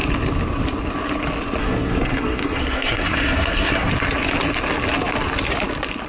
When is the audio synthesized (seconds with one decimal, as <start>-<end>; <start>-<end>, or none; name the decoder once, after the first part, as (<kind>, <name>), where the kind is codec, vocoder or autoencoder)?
1.6-3.9 (codec, SNAC)